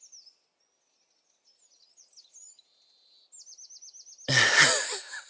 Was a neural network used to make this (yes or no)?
no